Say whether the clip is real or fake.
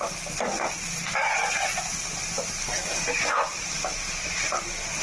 real